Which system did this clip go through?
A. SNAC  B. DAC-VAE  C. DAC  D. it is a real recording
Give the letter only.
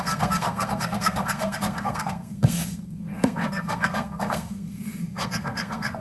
A